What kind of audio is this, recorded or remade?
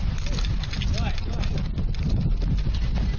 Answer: recorded